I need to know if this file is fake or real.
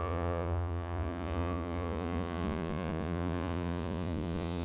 fake